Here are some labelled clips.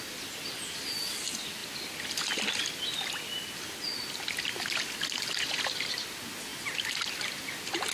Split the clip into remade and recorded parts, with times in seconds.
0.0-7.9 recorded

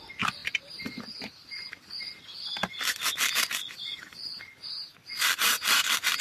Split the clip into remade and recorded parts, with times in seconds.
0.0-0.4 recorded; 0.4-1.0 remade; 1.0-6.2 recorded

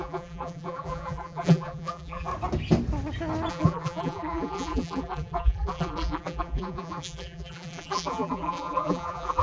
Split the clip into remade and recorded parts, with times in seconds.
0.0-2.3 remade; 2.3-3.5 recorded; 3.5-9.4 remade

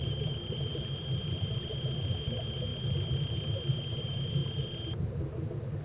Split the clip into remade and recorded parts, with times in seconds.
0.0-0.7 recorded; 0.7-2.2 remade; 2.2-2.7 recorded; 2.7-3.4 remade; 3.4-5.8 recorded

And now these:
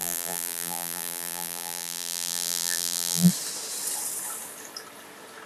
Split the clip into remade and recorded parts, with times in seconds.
0.0-3.3 remade; 3.3-5.5 recorded

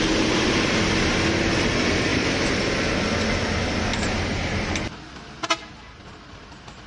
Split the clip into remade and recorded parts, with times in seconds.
0.0-2.1 recorded; 2.1-2.7 remade; 2.7-6.9 recorded

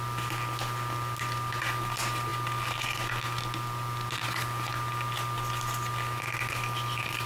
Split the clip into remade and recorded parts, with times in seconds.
0.0-7.3 recorded